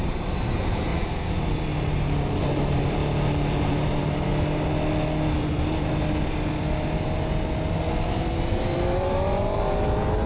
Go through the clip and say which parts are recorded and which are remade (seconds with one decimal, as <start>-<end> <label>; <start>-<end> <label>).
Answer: 0.0-0.9 remade; 0.9-2.4 recorded; 2.4-3.0 remade; 3.0-3.6 recorded; 3.6-4.3 remade; 4.3-8.5 recorded; 8.5-10.3 remade